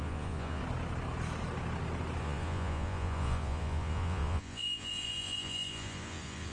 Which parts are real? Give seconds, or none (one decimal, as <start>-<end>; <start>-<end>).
0.6-2.2